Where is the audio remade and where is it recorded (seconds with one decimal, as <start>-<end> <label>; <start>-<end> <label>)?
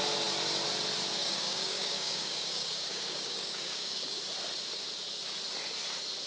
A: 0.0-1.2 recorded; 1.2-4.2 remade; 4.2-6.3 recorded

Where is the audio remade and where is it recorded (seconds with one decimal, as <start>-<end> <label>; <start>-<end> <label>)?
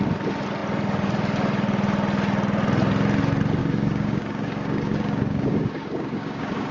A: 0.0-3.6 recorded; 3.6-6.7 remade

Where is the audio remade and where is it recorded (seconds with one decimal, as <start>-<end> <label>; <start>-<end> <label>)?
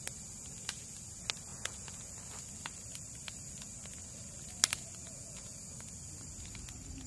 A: 0.0-1.5 recorded; 1.5-2.1 remade; 2.1-5.0 recorded; 5.0-5.6 remade; 5.6-7.1 recorded